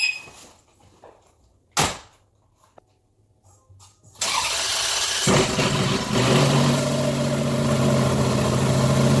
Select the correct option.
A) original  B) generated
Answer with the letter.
A